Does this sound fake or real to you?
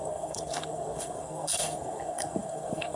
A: fake